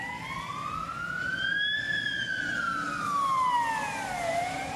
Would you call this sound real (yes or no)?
yes